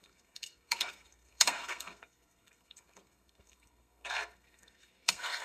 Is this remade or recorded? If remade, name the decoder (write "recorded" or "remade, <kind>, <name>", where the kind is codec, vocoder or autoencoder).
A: remade, codec, SNAC